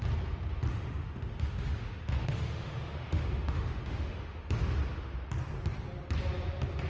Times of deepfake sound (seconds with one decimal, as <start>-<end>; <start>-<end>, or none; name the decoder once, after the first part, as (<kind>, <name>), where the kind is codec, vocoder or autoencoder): 0.7-4.6 (autoencoder, DAC-VAE)

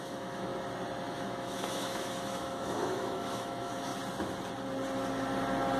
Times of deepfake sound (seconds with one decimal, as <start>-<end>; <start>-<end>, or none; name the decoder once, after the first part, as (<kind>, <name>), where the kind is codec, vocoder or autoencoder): 0.0-0.5 (autoencoder, DAC-VAE); 1.0-3.9

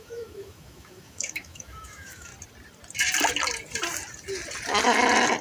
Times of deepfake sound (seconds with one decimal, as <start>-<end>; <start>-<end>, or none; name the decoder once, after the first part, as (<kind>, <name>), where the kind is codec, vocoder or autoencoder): 0.0-2.3 (autoencoder, DAC-VAE)

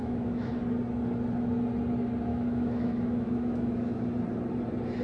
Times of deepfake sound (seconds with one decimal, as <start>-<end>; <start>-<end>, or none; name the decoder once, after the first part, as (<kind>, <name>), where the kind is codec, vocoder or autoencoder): 0.0-0.5 (autoencoder, DAC-VAE); 2.3-4.0

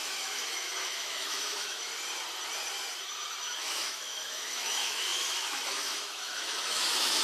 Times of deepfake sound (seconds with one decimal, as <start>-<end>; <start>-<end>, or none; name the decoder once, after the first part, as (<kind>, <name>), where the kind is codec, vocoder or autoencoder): 0.0-1.9 (autoencoder, DAC-VAE); 3.6-7.2